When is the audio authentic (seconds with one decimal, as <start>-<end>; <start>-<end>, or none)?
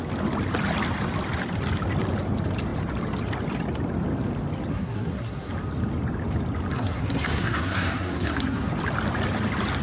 0.0-4.7; 5.5-6.7; 8.7-9.8